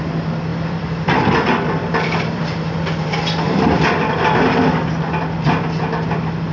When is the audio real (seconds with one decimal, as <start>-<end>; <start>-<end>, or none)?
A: 0.0-0.5; 4.4-6.5